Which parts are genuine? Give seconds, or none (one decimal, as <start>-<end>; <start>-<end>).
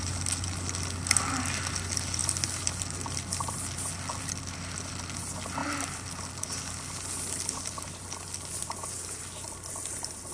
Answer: 0.0-10.3